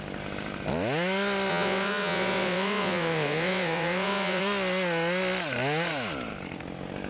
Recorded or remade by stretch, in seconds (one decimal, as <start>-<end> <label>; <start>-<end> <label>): 0.0-1.5 recorded; 1.5-4.4 remade; 4.4-7.1 recorded